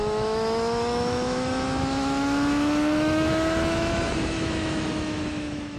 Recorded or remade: remade